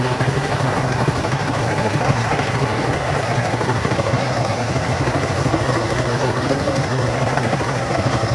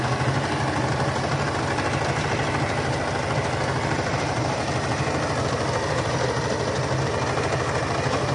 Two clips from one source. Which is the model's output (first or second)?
first